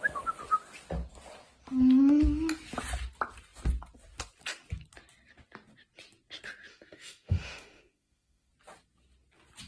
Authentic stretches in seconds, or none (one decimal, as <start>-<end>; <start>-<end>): 0.0-6.7; 8.5-9.7